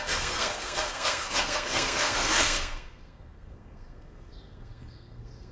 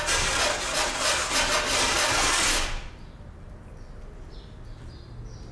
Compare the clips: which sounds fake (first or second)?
first